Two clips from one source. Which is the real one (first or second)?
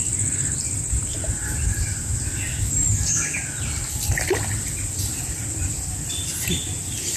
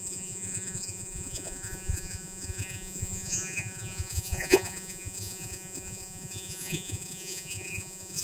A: first